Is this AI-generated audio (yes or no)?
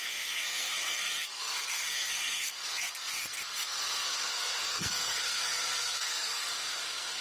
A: yes